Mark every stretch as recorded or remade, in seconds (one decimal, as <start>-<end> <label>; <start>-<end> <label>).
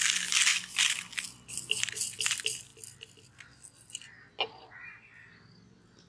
0.0-6.1 recorded